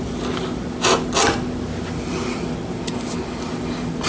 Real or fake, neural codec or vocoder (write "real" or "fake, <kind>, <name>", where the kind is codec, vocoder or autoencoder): real